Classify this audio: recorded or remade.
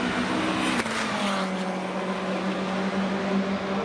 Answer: recorded